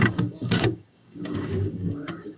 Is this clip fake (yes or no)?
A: yes